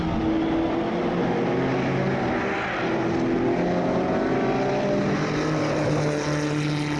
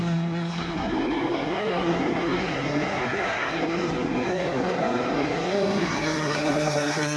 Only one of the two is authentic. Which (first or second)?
first